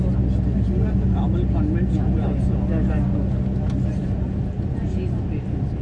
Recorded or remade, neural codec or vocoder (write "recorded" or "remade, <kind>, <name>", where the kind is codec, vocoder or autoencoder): recorded